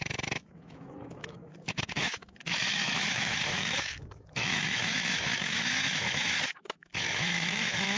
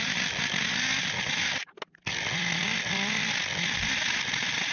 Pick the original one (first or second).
second